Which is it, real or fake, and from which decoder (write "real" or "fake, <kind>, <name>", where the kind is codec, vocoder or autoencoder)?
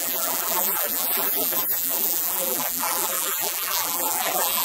fake, vocoder, BigVGAN v2